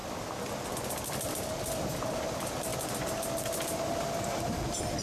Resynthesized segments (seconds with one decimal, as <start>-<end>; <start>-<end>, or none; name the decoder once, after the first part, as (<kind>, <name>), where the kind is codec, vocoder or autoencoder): 0.7-2.7 (vocoder, BigVGAN v2); 4.5-5.0